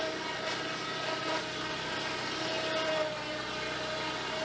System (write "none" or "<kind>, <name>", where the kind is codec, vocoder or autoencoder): none